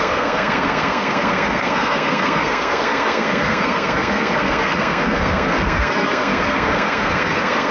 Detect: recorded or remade remade